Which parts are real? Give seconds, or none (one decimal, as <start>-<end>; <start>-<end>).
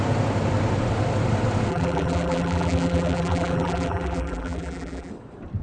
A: 0.0-1.7; 5.1-5.6